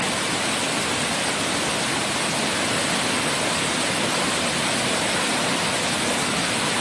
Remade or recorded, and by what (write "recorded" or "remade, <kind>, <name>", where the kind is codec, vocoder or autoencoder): recorded